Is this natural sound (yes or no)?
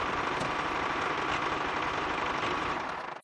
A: yes